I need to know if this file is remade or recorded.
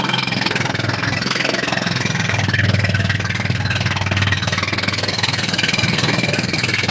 remade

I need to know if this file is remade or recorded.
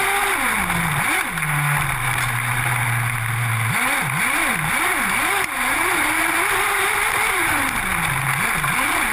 recorded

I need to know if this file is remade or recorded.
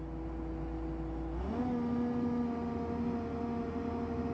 recorded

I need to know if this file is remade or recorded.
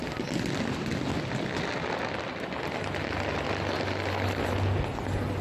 recorded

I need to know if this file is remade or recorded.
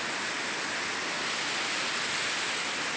recorded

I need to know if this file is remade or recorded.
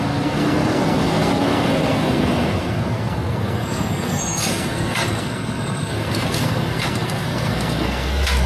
remade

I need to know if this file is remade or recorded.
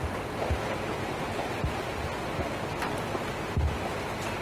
recorded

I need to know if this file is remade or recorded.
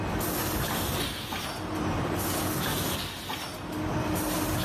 recorded